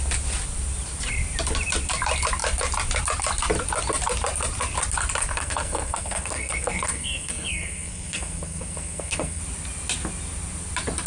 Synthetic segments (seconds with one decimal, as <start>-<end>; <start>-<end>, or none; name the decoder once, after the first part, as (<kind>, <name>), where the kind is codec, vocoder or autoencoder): 5.2-9.4 (codec, SNAC)